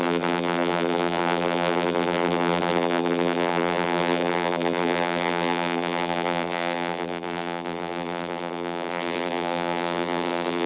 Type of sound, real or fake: fake